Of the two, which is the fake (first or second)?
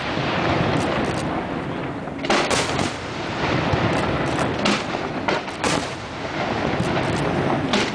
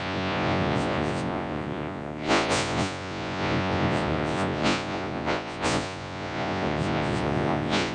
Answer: second